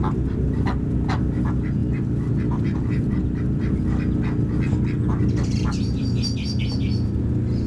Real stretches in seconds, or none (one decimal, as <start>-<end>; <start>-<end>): 0.0-1.8; 2.3-3.2; 3.8-5.2; 6.8-7.7